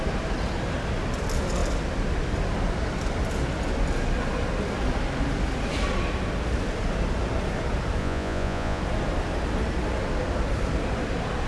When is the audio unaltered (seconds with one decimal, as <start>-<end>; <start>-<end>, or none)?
0.0-8.0; 8.8-11.5